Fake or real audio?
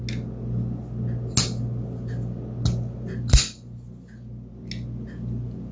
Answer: real